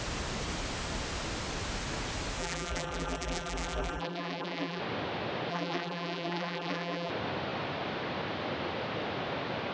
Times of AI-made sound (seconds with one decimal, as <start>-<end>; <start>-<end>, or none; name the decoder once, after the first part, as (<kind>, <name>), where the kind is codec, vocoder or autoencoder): 2.4-4.8 (vocoder, BigVGAN v2); 5.5-7.1